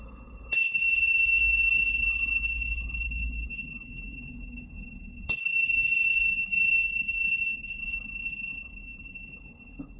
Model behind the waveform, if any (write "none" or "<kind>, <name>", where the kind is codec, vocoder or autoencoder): codec, HILCodec